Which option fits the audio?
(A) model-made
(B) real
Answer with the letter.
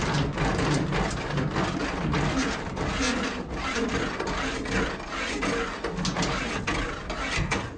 B